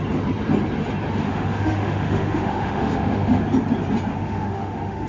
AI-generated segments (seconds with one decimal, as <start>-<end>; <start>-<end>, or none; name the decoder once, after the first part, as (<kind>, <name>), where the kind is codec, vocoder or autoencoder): 1.2-3.4 (autoencoder, DAC-VAE); 4.1-5.1